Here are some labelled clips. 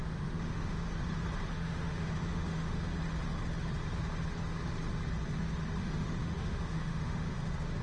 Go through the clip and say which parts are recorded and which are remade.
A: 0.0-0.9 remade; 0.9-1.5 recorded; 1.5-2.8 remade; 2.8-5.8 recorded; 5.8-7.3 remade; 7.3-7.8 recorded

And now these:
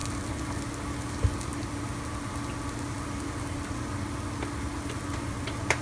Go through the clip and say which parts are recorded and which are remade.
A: 0.0-5.8 recorded

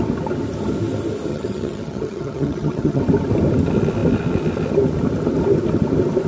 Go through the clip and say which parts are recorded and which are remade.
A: 0.0-1.3 recorded; 1.3-3.0 remade; 3.0-6.3 recorded

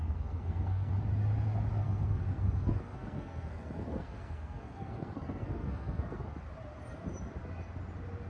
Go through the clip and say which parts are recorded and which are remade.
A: 0.0-0.9 remade; 0.9-1.7 recorded; 1.7-6.4 remade; 6.4-8.3 recorded

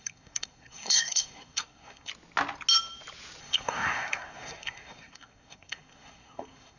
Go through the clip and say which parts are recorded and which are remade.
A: 0.0-2.1 remade; 2.1-3.4 recorded; 3.4-6.8 remade